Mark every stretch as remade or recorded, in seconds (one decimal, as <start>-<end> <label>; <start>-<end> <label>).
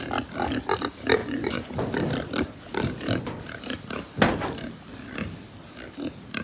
0.0-1.2 recorded; 1.2-1.8 remade; 1.8-6.4 recorded